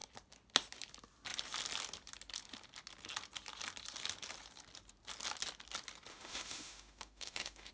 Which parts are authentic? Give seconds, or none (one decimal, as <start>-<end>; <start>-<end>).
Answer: 0.0-6.1